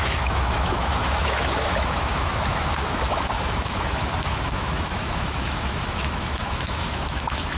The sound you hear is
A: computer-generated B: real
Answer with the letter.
A